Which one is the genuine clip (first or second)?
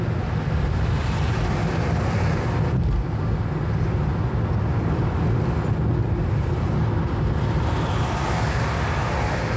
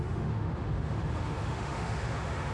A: first